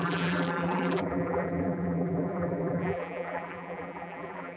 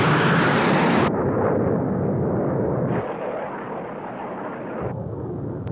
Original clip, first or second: second